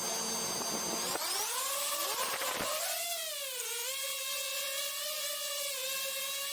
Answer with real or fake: real